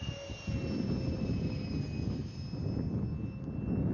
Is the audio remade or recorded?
recorded